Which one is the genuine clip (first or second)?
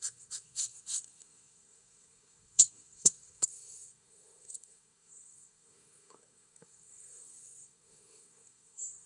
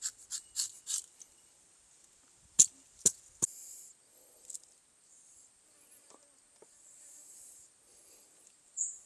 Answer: second